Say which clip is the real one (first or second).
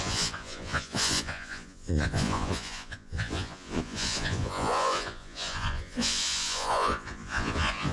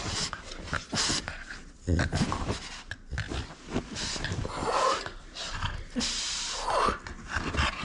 second